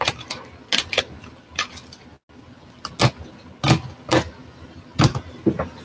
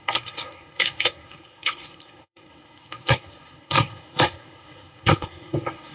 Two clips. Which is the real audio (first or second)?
first